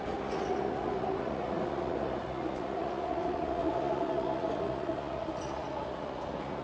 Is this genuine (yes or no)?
no